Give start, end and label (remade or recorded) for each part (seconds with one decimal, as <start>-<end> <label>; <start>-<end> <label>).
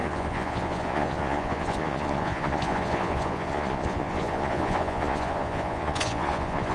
0.0-6.7 remade